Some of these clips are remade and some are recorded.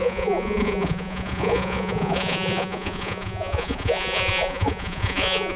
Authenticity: remade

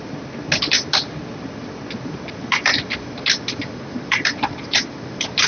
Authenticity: recorded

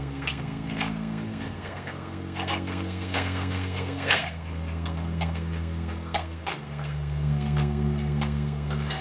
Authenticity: remade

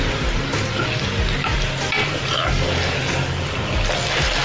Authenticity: recorded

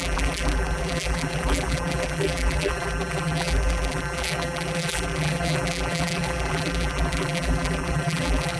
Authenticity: remade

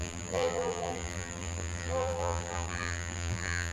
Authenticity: remade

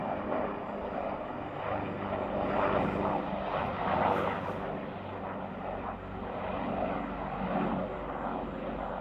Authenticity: recorded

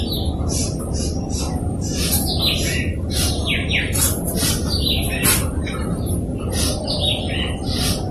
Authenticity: remade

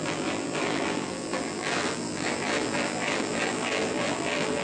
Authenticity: remade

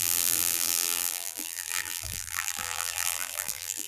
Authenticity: remade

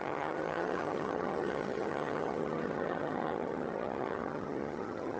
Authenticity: remade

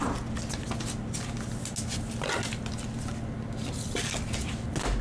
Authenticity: recorded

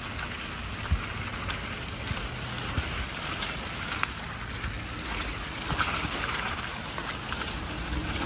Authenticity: recorded